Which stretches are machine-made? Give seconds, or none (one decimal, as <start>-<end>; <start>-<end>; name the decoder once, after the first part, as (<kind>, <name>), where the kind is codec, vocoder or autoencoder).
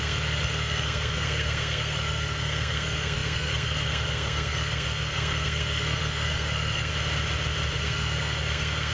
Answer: 0.0-6.9 (codec, SNAC); 7.8-8.9